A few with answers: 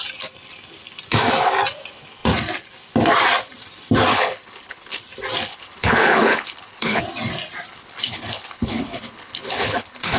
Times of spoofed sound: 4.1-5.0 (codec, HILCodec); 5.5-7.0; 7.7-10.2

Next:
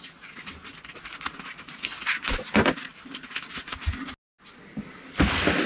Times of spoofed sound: none

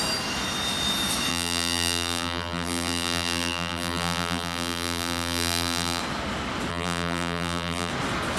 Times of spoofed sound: 1.3-6.0 (vocoder, BigVGAN v2); 6.7-7.9

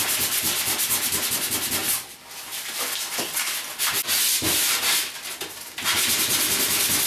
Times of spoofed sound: none

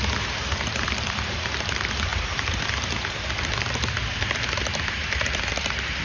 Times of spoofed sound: 0.0-6.0 (vocoder, BigVGAN v2)